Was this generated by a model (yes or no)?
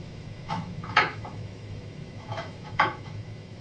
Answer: yes